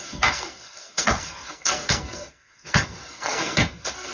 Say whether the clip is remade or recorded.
remade